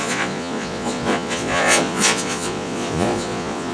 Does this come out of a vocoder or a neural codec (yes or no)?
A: yes